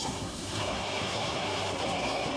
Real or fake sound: fake